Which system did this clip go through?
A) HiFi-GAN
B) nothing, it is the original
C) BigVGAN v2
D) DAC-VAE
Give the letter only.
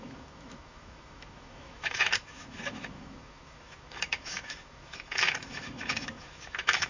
D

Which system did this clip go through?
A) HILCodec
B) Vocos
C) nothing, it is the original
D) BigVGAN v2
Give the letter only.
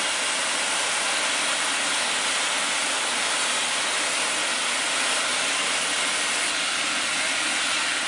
C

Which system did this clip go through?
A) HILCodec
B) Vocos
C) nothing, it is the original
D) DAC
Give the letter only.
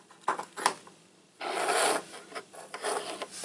C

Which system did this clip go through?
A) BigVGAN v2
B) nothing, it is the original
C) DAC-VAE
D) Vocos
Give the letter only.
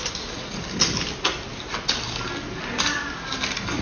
B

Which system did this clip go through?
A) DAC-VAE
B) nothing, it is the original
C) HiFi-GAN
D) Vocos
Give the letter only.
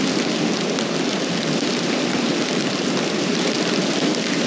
B